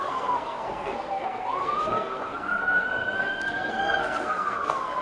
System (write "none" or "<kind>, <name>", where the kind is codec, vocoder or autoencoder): codec, SNAC